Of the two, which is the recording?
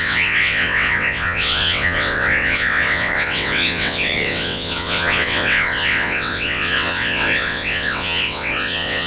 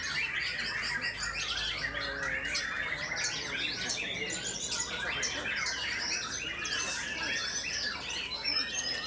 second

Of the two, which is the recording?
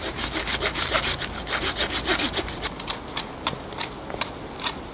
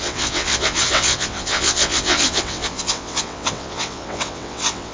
first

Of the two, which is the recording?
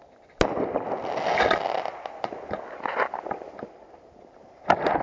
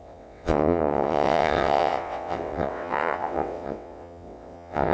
first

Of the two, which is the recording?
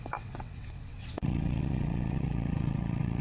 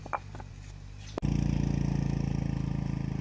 second